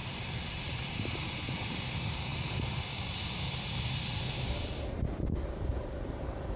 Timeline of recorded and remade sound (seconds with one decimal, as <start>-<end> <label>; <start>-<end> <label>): 0.0-6.6 recorded